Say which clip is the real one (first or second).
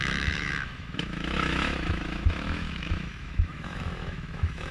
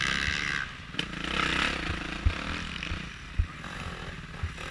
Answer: second